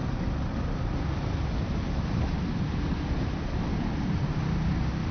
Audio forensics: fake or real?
real